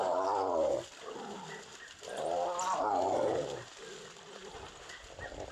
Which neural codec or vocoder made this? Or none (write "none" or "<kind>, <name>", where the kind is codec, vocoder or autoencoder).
none